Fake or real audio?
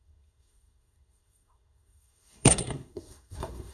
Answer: fake